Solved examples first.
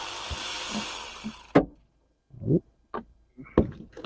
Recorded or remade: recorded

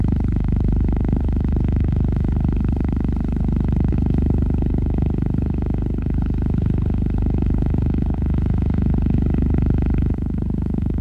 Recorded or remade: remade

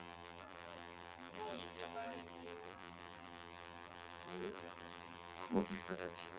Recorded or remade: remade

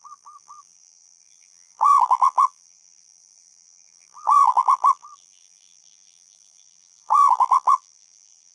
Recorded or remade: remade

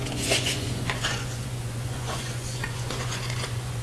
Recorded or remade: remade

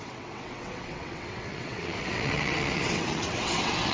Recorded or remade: remade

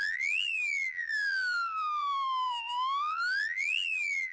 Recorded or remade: remade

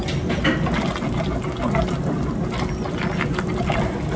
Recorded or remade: recorded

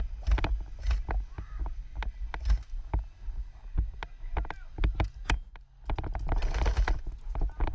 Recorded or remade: recorded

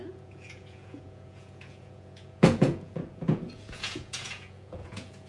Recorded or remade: remade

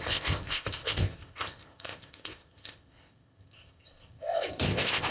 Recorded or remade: remade